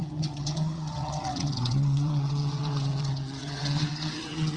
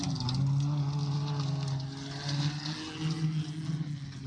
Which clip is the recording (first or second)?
second